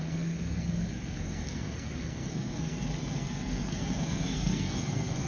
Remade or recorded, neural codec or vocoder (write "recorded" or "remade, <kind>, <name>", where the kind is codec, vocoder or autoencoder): remade, codec, SNAC